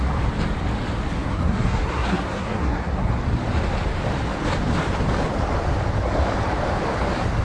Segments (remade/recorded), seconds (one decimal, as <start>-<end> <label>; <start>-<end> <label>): 0.0-1.2 recorded; 1.2-3.1 remade; 3.1-7.4 recorded